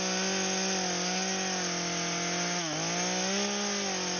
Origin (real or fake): real